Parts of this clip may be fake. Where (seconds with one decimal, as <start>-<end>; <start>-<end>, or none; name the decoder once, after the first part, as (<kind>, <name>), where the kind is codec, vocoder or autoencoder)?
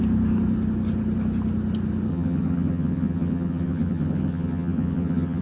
2.1-5.4 (vocoder, HiFi-GAN)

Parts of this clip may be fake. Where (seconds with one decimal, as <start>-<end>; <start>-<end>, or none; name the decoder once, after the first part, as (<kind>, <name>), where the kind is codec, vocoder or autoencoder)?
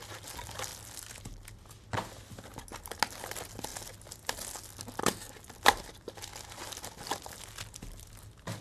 none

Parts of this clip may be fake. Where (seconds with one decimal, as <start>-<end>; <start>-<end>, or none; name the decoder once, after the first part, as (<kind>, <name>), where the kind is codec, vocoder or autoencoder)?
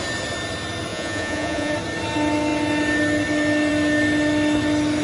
0.9-1.7 (vocoder, Vocos)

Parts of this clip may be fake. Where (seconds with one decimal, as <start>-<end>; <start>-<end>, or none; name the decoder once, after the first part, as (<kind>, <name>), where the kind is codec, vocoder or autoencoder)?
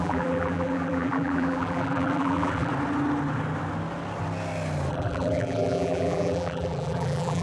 0.0-2.7 (vocoder, BigVGAN v2); 4.9-7.4